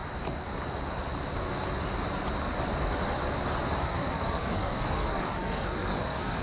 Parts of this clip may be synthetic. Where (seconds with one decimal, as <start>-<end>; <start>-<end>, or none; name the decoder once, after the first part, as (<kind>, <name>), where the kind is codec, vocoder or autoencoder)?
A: 3.8-6.4 (codec, SNAC)